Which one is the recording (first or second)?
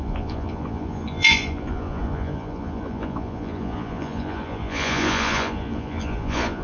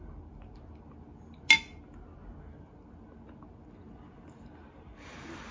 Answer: second